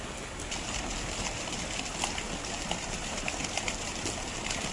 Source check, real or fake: real